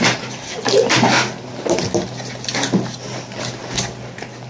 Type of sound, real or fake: real